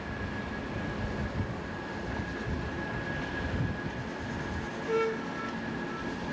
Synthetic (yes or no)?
no